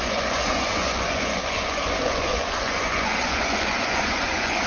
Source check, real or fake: fake